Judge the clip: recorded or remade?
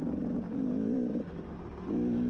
recorded